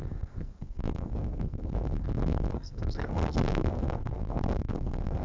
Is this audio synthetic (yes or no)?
yes